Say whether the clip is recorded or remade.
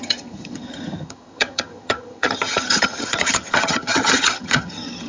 remade